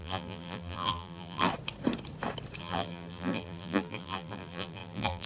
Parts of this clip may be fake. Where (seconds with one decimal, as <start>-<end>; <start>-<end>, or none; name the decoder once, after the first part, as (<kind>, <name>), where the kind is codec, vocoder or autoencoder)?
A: 0.0-1.5 (vocoder, BigVGAN v2); 2.6-5.3

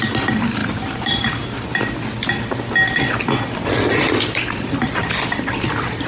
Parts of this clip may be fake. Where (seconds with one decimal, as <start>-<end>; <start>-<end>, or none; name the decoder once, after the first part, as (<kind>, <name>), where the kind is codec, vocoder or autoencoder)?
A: 0.6-1.2 (vocoder, BigVGAN v2)